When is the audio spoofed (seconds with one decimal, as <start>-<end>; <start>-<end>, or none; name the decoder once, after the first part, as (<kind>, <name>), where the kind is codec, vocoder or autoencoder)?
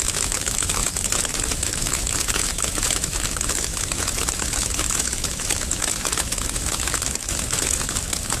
0.0-8.4 (autoencoder, DAC-VAE)